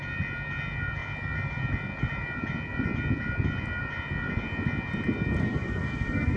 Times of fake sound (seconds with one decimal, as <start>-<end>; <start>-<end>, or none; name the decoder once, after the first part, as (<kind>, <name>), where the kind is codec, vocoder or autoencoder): 5.4-6.4 (codec, SNAC)

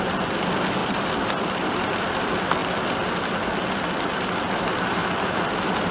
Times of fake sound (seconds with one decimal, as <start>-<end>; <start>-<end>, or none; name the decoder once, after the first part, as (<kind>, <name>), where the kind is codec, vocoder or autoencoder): 0.8-2.2 (vocoder, BigVGAN v2); 5.0-5.9